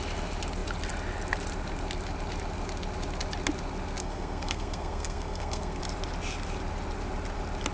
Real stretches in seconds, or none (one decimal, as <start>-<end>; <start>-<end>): 0.0-4.0; 5.8-7.7